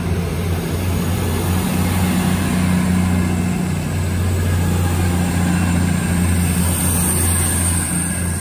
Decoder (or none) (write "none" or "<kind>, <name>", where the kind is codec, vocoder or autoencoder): none